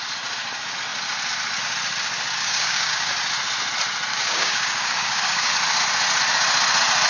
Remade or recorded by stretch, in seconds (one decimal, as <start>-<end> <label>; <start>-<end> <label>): 0.0-2.4 recorded; 2.4-3.1 remade; 3.1-4.1 recorded; 4.1-5.5 remade; 5.5-7.1 recorded